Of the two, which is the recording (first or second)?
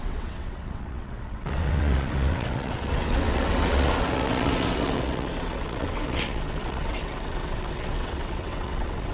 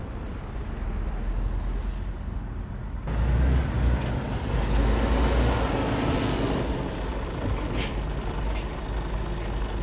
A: second